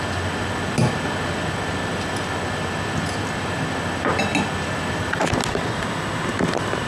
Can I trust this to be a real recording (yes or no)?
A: yes